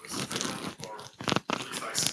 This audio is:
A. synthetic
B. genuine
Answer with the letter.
A